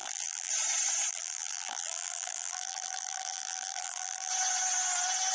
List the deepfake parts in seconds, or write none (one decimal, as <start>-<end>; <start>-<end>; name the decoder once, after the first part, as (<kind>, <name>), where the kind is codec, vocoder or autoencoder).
0.0-0.5 (vocoder, BigVGAN v2); 1.1-4.3